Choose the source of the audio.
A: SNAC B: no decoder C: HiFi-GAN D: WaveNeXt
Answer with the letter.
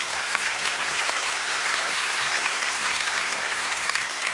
A